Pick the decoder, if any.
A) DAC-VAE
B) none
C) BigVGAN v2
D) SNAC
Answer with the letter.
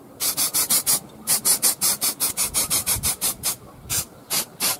C